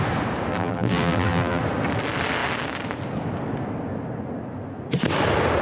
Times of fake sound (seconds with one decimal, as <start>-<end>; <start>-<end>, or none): 0.5-1.6